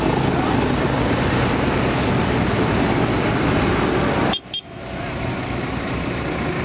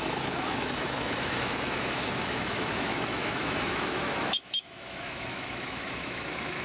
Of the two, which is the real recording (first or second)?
first